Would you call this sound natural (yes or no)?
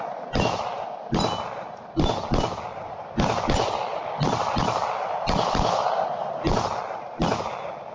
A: yes